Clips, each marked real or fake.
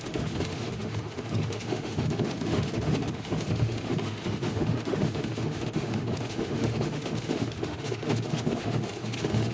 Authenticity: fake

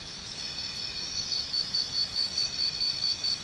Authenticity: fake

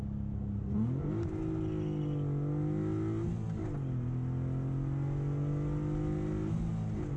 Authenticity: real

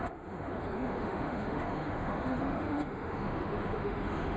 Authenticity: fake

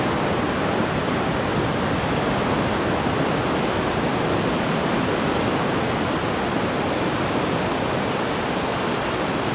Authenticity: real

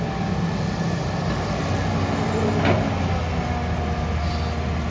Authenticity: real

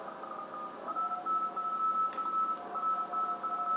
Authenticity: real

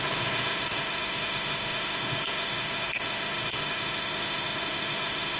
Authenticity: fake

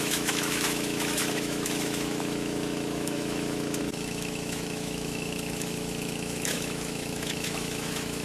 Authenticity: fake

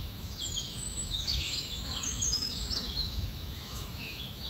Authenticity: fake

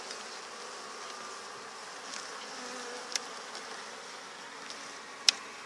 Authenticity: real